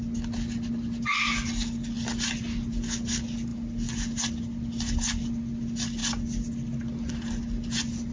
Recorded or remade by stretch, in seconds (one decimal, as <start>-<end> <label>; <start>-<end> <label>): 0.0-8.1 recorded